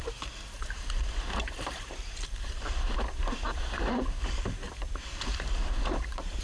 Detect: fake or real fake